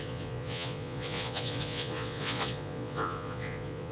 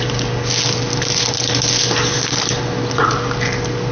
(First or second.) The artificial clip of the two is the first